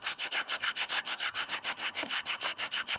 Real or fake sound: fake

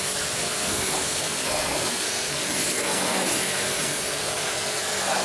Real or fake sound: fake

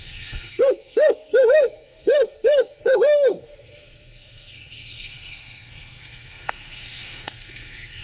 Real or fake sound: fake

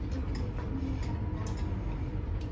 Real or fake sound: real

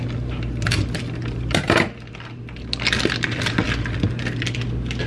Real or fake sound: real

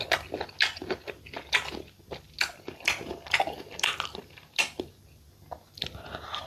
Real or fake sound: real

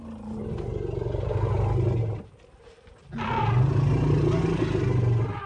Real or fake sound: real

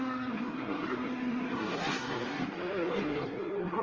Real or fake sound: fake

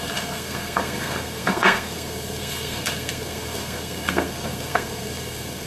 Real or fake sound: fake